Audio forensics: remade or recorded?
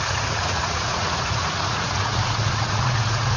remade